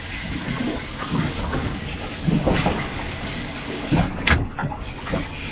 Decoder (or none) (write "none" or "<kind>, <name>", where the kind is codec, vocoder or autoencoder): codec, DAC